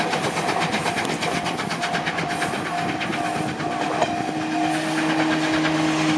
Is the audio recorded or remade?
recorded